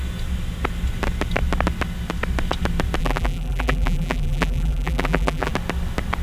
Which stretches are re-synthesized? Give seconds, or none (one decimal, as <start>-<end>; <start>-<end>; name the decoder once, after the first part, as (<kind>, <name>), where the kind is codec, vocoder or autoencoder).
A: 3.0-5.5 (vocoder, BigVGAN v2)